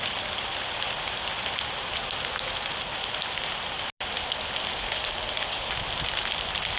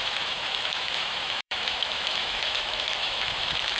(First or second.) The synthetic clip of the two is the second